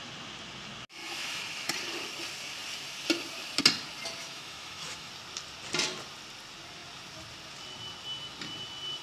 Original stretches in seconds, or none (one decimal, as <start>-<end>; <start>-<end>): 0.0-1.0; 1.7-4.2; 5.1-9.0